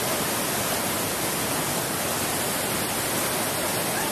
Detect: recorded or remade recorded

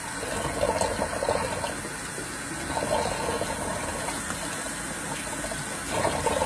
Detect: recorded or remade recorded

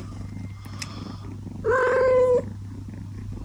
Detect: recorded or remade recorded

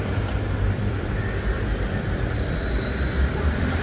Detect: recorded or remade remade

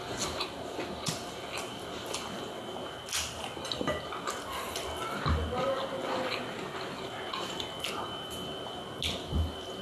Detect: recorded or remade recorded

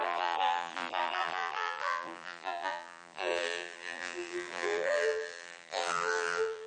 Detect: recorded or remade remade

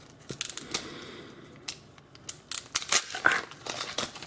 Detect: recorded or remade recorded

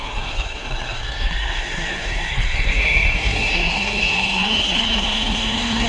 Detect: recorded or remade remade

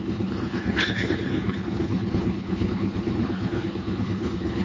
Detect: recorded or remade remade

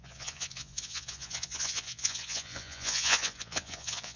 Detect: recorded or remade remade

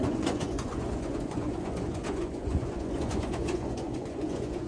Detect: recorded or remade remade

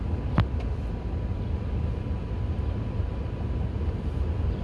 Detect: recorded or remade remade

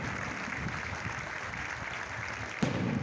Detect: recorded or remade recorded